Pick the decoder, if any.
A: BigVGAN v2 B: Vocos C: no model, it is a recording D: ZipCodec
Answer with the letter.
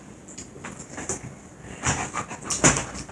C